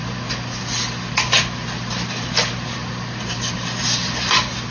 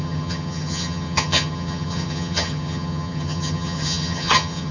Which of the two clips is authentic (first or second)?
first